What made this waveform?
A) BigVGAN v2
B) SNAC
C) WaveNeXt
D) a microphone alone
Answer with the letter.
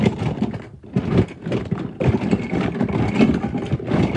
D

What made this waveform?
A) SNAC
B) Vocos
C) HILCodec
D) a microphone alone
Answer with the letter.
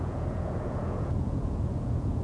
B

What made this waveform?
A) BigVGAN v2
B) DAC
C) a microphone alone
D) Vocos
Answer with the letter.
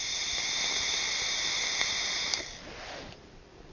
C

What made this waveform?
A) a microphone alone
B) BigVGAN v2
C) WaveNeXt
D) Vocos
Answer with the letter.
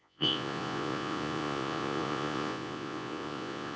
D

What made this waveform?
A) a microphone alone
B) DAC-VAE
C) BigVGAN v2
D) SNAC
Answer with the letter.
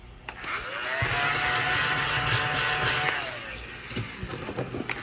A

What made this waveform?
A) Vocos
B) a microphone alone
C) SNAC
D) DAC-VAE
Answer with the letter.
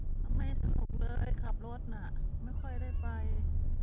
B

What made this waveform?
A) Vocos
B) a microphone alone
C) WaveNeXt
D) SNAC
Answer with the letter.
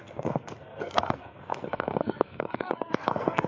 D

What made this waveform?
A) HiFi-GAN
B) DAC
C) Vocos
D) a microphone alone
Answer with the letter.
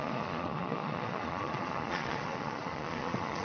C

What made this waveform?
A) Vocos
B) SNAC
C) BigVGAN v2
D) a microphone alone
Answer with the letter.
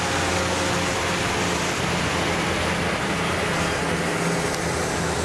D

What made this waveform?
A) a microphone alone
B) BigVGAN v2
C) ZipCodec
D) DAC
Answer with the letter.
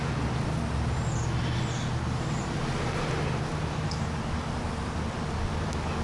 A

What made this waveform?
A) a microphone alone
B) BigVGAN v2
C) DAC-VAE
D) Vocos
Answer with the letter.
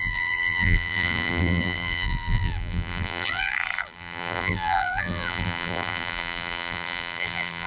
B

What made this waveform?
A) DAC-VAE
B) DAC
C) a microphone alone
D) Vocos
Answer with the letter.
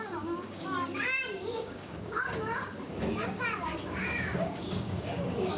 B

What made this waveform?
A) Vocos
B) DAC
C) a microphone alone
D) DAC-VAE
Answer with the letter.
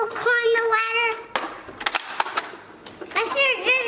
C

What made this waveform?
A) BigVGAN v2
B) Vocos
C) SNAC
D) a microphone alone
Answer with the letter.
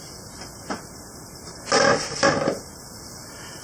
D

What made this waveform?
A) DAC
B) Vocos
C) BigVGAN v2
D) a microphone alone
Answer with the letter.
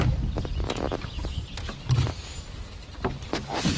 D